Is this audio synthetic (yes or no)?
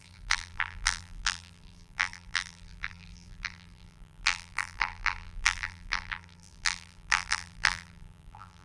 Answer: yes